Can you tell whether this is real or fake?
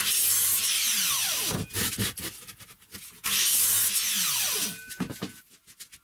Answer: real